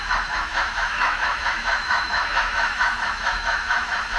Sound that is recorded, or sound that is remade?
remade